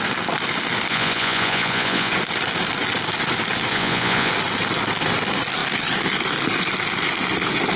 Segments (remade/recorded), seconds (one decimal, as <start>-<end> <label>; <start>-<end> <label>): 0.0-0.9 recorded; 0.9-2.1 remade; 2.1-3.7 recorded; 3.7-4.3 remade; 4.3-7.8 recorded